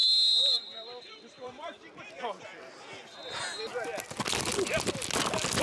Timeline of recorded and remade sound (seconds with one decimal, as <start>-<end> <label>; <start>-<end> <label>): 0.0-2.2 remade; 2.2-5.6 recorded